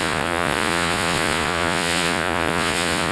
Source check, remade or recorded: remade